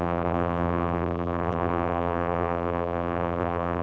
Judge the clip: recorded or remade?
remade